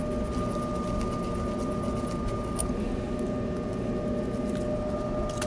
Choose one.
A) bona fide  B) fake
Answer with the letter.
A